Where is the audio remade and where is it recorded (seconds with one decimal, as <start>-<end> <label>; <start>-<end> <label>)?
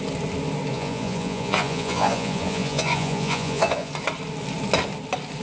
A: 0.0-0.7 recorded; 0.7-3.9 remade; 3.9-5.4 recorded